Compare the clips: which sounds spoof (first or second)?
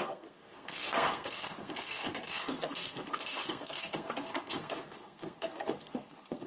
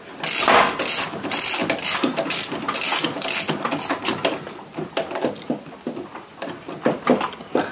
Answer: first